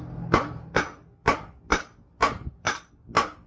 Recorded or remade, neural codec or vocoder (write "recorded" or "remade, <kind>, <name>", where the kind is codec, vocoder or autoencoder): recorded